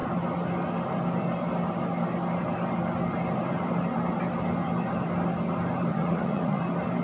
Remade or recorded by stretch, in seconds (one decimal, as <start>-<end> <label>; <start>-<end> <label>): 0.0-5.9 recorded; 5.9-6.6 remade; 6.6-7.0 recorded